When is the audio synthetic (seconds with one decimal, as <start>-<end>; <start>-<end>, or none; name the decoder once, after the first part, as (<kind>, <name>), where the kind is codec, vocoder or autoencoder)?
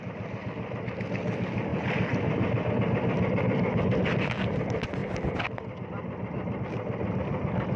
none